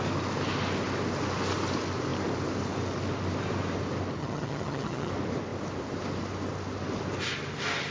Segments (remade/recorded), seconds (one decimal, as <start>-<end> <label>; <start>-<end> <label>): 0.0-4.2 recorded; 4.2-5.1 remade; 5.1-7.9 recorded